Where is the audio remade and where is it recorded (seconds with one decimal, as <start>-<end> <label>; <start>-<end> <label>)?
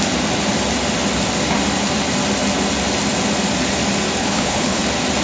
0.0-4.2 recorded; 4.2-4.8 remade; 4.8-5.2 recorded